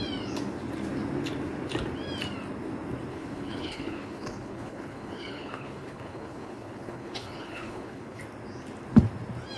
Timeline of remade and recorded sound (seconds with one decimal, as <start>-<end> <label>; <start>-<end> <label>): 0.0-3.1 recorded; 3.1-8.2 remade; 8.2-9.6 recorded